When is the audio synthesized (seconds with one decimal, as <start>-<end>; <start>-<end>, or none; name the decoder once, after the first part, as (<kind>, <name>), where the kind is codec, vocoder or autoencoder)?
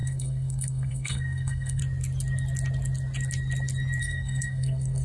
0.0-1.8 (codec, SNAC); 4.0-5.0